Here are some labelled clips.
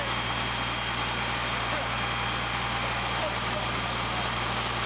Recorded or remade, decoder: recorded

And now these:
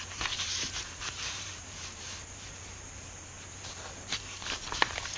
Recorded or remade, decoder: remade, vocoder, BigVGAN v2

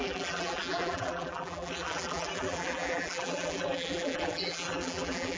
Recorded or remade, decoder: remade, vocoder, BigVGAN v2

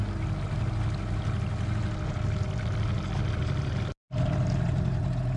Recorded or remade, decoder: recorded